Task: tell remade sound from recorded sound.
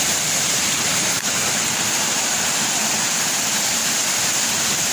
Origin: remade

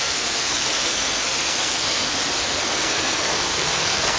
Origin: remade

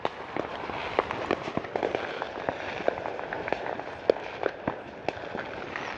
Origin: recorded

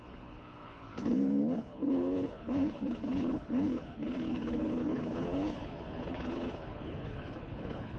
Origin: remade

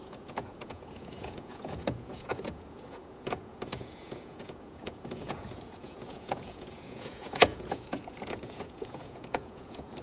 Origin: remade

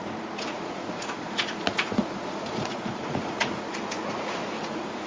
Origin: remade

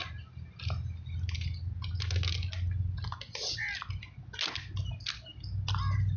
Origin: recorded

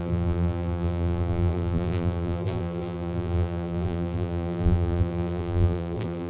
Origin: remade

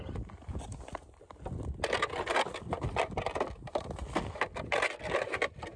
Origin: recorded